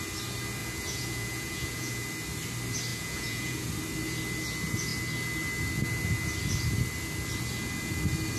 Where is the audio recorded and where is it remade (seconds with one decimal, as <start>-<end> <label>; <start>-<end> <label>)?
0.0-0.6 recorded; 0.6-1.9 remade; 1.9-2.9 recorded; 2.9-3.7 remade; 3.7-8.4 recorded